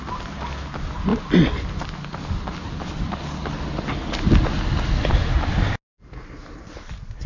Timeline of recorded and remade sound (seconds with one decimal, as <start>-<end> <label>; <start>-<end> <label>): 0.0-7.3 recorded

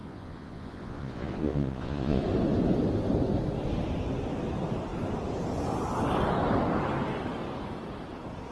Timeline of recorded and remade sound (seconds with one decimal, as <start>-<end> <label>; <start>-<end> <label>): 0.0-2.2 remade; 2.2-8.5 recorded

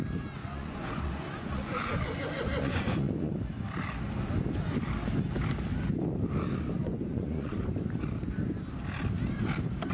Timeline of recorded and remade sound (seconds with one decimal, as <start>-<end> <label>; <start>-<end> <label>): 0.0-0.4 recorded; 0.4-3.4 remade; 3.4-6.8 recorded; 6.8-7.7 remade; 7.7-9.9 recorded

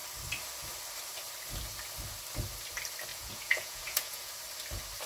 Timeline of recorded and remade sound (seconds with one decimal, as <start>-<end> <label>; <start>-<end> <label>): 0.0-3.1 recorded; 3.1-4.3 remade; 4.3-5.1 recorded